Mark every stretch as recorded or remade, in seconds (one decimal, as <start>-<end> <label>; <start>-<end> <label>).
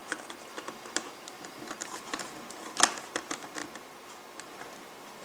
0.0-5.2 recorded